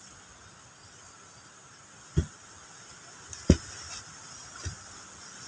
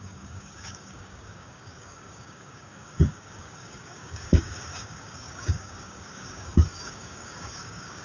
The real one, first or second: first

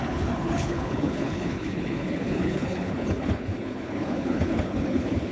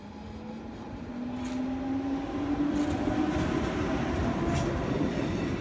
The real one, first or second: second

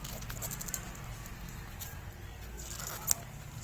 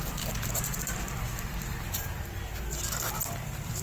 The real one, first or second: first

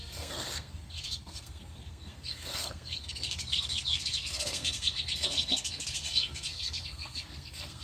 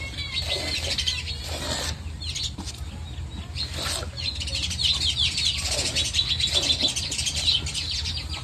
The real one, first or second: second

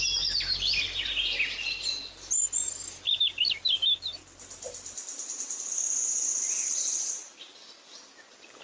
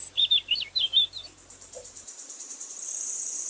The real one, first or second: first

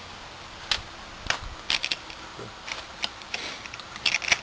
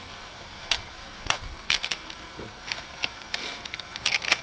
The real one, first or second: first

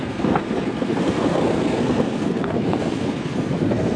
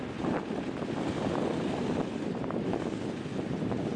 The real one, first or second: second